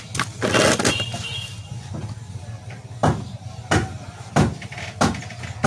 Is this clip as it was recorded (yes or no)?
yes